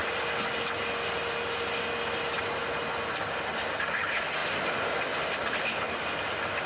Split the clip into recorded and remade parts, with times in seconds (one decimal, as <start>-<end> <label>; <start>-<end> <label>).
0.0-6.7 recorded